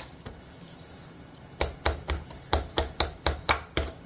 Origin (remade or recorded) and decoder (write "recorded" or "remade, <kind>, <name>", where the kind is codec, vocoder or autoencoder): recorded